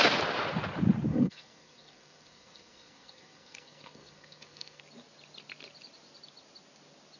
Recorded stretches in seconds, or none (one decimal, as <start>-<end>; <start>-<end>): 0.0-1.1; 4.8-7.2